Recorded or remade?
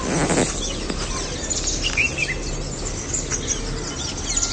recorded